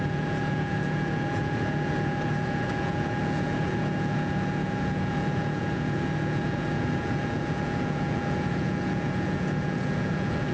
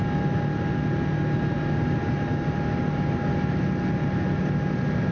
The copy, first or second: first